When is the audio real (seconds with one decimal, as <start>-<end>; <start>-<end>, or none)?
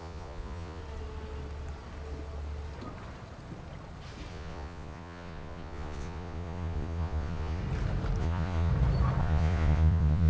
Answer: 0.8-4.3; 7.6-8.2; 8.7-9.2